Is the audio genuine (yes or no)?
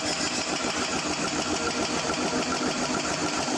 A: yes